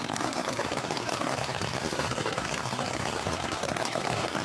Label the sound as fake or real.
fake